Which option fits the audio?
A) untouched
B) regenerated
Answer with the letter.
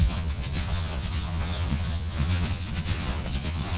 B